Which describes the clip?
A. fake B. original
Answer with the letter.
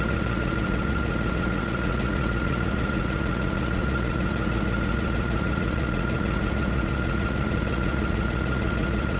A